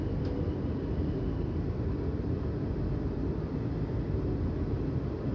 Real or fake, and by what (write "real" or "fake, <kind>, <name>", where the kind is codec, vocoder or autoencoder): real